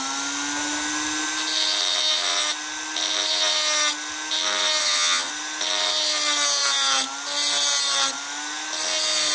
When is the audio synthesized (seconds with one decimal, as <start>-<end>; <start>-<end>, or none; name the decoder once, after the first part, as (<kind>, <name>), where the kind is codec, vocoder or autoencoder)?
4.8-5.3 (vocoder, HiFi-GAN)